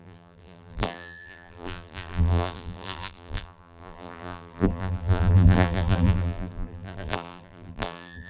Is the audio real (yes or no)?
no